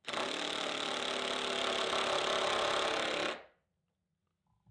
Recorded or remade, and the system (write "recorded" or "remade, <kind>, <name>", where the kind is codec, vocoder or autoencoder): recorded